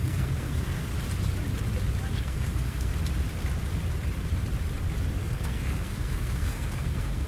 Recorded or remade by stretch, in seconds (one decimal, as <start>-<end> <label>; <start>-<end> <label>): 0.0-0.9 remade; 0.9-2.1 recorded; 2.1-2.9 remade; 2.9-5.2 recorded; 5.2-7.3 remade